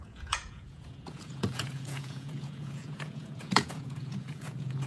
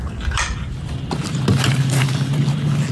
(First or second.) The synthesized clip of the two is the first